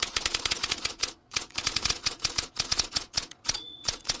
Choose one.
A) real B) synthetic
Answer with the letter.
B